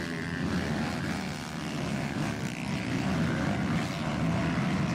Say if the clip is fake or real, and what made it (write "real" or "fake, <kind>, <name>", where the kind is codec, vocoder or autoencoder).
real